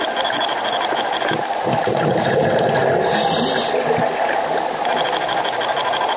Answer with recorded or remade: recorded